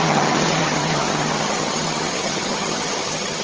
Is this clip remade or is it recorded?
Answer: remade